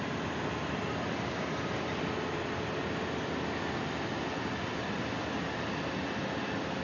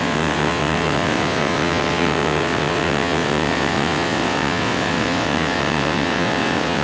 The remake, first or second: second